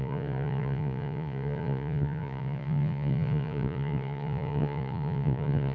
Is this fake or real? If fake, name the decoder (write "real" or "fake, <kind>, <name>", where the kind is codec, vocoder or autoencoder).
fake, vocoder, Vocos